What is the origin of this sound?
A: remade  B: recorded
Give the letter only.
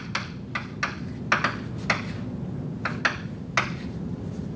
B